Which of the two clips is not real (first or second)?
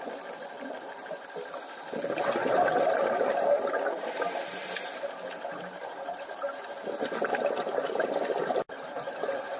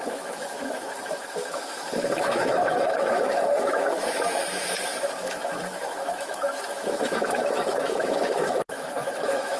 second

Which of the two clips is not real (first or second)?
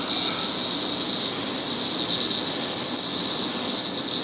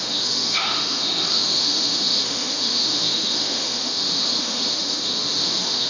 second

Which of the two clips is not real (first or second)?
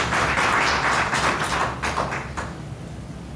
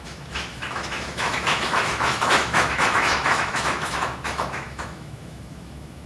second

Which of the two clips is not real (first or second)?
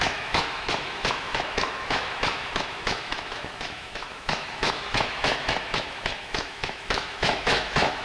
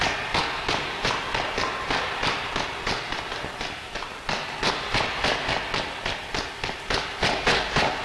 first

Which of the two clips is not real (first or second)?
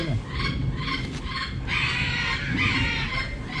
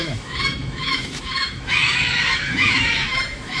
second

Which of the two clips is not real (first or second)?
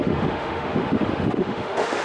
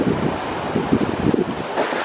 first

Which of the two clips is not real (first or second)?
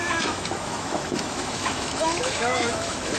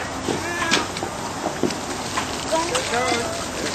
first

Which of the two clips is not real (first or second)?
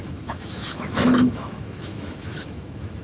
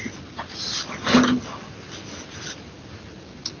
first